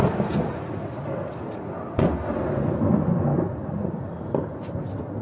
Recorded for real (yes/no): yes